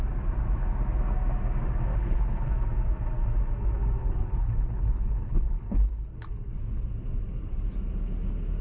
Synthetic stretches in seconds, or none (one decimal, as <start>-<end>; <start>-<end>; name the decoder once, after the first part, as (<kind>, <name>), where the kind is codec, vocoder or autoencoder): 1.9-2.5 (codec, HILCodec); 4.0-6.5